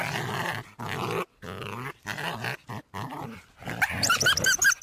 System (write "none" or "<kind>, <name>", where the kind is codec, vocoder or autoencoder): none